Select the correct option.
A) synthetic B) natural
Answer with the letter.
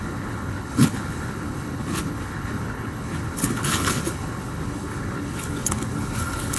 A